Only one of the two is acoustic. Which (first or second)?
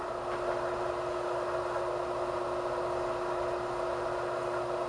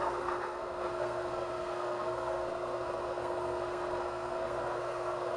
first